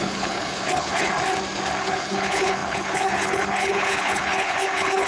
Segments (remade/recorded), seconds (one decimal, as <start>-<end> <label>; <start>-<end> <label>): 0.0-1.1 remade; 1.1-1.8 recorded; 1.8-5.1 remade